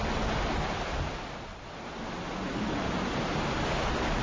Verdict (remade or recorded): recorded